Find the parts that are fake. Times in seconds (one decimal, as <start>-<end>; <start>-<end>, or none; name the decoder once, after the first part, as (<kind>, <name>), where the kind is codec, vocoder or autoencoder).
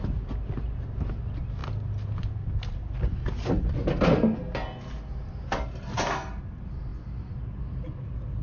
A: none